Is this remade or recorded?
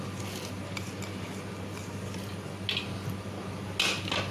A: recorded